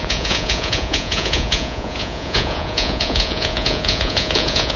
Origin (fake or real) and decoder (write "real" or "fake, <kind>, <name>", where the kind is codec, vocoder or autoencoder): fake, vocoder, Vocos